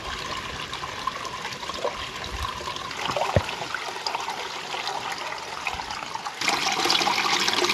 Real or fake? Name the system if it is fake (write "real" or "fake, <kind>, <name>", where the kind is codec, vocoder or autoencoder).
real